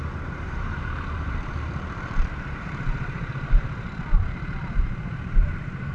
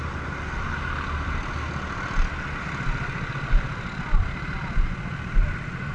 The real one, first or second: second